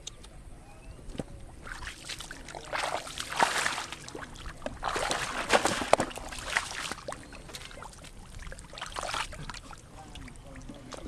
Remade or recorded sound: recorded